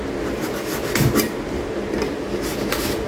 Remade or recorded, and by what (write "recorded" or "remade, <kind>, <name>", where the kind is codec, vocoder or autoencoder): recorded